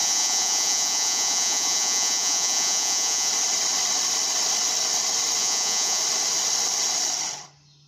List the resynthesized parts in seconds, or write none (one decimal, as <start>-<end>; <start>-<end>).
0.0-3.3; 5.4-6.0